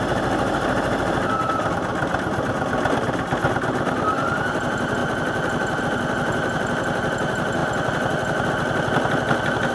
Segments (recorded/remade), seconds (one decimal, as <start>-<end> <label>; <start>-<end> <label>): 0.0-5.0 recorded; 5.0-5.8 remade; 5.8-9.7 recorded